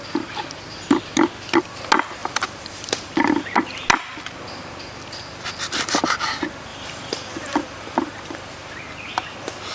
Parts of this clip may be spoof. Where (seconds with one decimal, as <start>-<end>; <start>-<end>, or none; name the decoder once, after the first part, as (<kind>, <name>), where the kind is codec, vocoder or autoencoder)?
2.2-3.4 (vocoder, BigVGAN v2); 6.7-8.5